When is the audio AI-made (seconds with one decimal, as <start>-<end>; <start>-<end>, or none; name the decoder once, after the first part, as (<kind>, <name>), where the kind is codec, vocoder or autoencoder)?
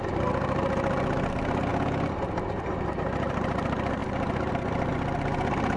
none